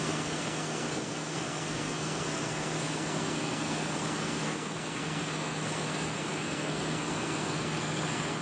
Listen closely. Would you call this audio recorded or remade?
remade